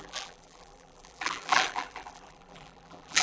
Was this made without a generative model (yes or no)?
no